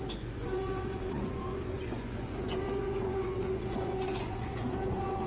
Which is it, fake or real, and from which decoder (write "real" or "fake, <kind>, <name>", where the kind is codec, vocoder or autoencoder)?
fake, vocoder, Vocos